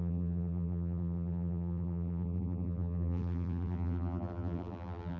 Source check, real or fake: fake